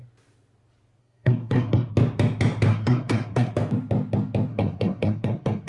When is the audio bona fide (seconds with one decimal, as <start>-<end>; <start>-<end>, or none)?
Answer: 0.0-1.0; 1.9-2.7; 3.5-4.5